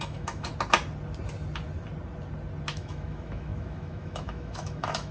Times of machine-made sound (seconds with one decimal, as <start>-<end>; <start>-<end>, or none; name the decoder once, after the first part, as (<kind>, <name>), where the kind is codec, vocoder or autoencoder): 0.0-0.5 (autoencoder, DAC-VAE); 2.7-5.1

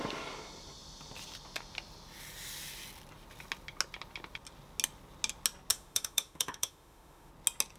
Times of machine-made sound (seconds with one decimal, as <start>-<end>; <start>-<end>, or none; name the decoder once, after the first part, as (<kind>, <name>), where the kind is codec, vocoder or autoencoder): 5.7-7.3 (autoencoder, DAC-VAE)

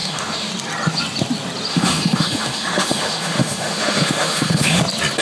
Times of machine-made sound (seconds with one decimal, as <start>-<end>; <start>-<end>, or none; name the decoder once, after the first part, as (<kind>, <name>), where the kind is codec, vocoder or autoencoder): 0.0-0.5 (autoencoder, DAC-VAE); 1.7-4.8

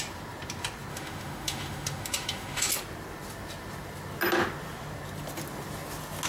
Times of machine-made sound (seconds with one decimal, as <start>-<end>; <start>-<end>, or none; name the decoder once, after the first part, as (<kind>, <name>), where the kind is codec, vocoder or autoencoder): 0.9-2.7 (autoencoder, DAC-VAE)

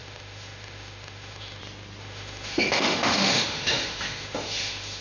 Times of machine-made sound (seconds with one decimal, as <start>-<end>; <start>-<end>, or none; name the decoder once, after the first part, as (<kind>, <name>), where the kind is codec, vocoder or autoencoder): 0.0-1.6 (autoencoder, DAC-VAE); 2.0-5.0